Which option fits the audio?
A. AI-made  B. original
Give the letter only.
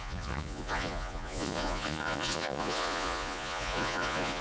A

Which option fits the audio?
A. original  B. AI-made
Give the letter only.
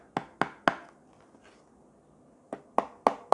A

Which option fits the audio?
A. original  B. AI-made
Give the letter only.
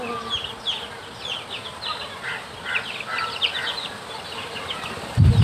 A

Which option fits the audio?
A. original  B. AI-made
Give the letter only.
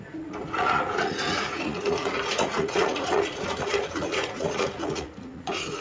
B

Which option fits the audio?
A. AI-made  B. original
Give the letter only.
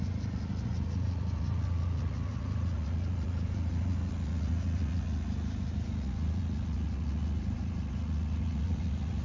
A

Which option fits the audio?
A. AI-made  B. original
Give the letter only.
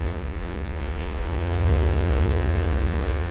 A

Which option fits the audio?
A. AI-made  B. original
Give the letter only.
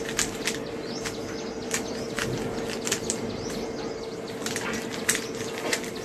B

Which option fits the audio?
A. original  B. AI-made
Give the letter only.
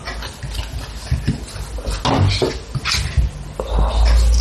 A